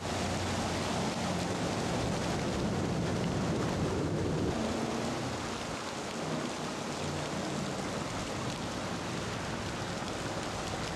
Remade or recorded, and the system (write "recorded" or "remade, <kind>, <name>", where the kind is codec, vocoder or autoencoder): recorded